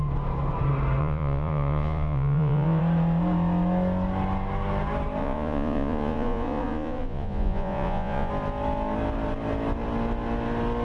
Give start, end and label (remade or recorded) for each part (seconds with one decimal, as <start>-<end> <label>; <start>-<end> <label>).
0.0-1.0 recorded; 1.0-2.8 remade; 2.8-5.2 recorded; 5.2-8.3 remade; 8.3-10.8 recorded